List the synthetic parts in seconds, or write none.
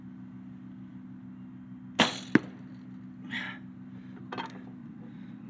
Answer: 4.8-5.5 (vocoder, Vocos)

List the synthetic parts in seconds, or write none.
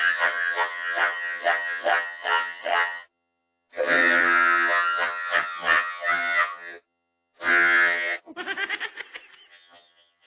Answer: 0.0-8.3 (vocoder, HiFi-GAN); 9.5-10.3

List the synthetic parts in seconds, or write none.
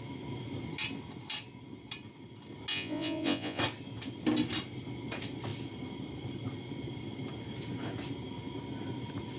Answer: 2.7-3.6 (vocoder, Vocos)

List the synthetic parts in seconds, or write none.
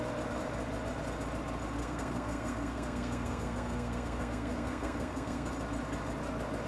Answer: 1.8-5.5 (codec, SNAC)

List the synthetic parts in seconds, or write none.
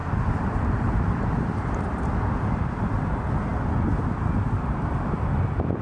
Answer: 0.0-2.8 (vocoder, BigVGAN v2)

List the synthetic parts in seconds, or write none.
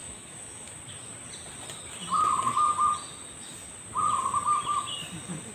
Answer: 0.0-0.8 (autoencoder, DAC-VAE)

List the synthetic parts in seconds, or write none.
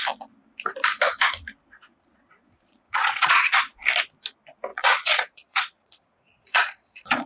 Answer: 1.9-3.6 (vocoder, Vocos); 4.7-7.3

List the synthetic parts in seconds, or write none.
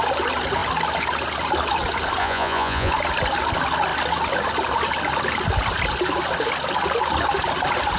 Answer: 2.2-2.9 (vocoder, Vocos)